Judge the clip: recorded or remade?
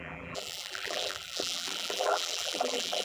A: remade